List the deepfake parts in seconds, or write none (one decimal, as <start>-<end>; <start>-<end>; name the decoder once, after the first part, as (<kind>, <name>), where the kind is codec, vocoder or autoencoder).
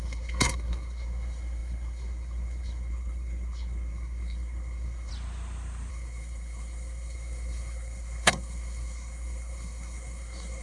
0.0-5.1 (codec, SNAC); 5.9-10.6